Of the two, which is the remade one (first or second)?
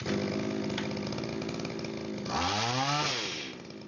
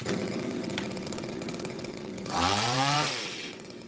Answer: second